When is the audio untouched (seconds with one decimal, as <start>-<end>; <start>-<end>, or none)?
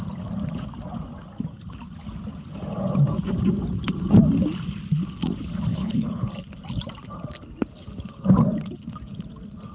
0.0-5.7; 6.3-9.7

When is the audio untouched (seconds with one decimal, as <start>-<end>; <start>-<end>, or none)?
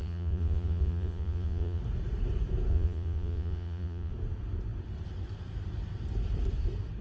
1.8-2.7; 4.1-7.0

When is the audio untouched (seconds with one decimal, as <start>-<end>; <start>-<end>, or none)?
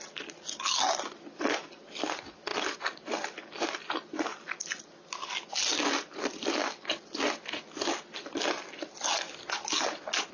0.0-10.3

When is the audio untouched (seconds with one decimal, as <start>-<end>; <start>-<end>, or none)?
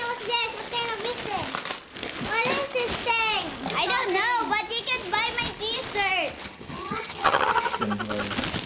0.0-6.4; 7.8-8.7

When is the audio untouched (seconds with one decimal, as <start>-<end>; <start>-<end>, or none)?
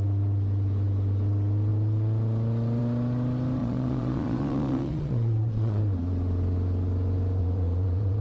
0.0-3.6; 5.8-7.4